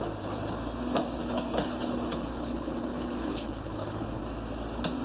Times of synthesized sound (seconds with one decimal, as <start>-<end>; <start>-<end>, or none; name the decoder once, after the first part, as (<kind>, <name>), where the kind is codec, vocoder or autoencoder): 1.2-4.2 (codec, HILCodec)